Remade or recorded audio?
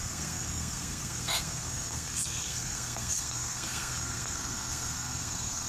remade